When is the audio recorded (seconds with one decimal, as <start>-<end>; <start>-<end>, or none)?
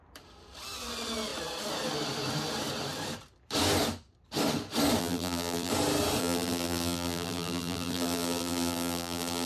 0.0-5.0; 5.7-6.2